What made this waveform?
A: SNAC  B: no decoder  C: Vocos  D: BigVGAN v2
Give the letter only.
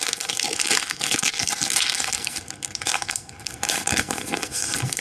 A